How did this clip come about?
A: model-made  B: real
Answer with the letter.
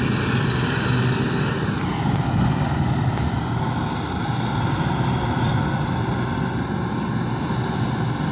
B